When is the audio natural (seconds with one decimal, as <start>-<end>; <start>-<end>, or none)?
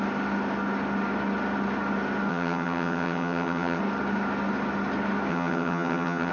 0.0-2.3; 3.8-5.3